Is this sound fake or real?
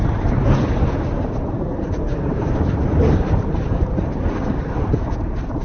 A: real